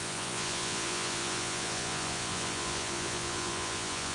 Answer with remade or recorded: remade